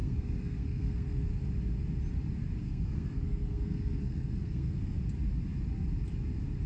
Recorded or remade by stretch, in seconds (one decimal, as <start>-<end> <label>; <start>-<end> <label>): 0.0-1.4 remade; 1.4-2.6 recorded; 2.6-5.0 remade; 5.0-6.7 recorded

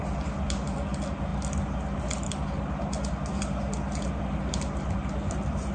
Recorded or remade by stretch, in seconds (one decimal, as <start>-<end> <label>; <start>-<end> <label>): 0.0-5.7 recorded

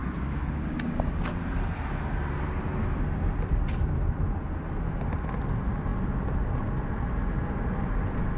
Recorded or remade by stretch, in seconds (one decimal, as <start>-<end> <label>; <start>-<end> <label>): 0.0-1.3 remade; 1.3-8.4 recorded

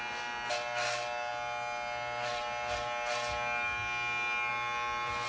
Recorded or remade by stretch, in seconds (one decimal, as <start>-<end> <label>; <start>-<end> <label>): 0.0-5.3 recorded